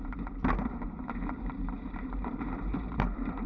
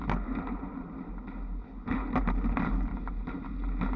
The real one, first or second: second